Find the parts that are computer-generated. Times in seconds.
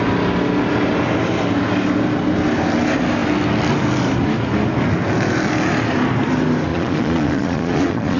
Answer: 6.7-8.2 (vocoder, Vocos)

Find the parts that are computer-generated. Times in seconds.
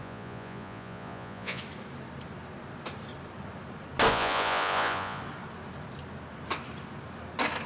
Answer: 0.0-1.6 (vocoder, Vocos); 4.1-5.2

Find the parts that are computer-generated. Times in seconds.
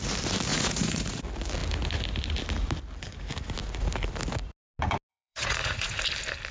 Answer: 0.5-1.2 (vocoder, Vocos); 5.1-6.0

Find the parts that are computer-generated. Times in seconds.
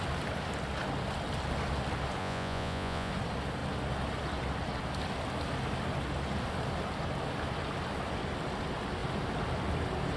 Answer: 2.2-3.1 (vocoder, Vocos)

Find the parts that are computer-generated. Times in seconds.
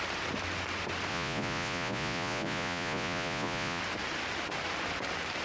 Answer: 1.1-3.8 (vocoder, Vocos)